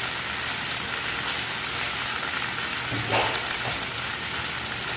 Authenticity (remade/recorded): recorded